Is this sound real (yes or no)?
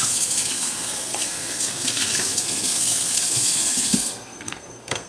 no